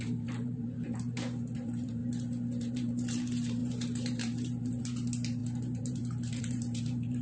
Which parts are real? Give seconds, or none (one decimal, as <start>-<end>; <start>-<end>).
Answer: 2.0-2.6